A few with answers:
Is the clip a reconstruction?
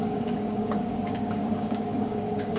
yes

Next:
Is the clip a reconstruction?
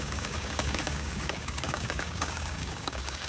yes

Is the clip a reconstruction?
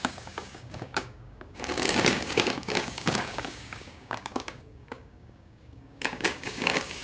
yes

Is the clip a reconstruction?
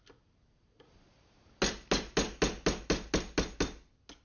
no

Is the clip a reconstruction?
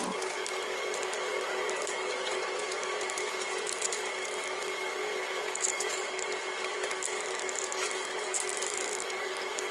yes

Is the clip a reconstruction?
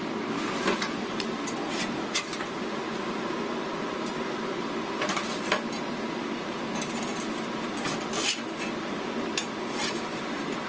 no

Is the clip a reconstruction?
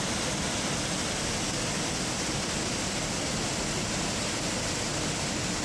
no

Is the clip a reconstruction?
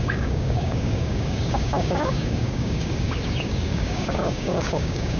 yes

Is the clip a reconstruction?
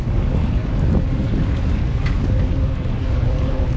yes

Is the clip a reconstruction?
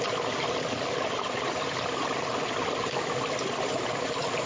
no